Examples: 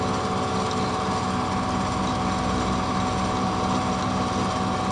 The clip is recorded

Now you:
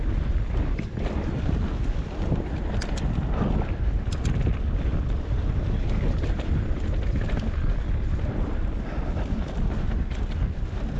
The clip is recorded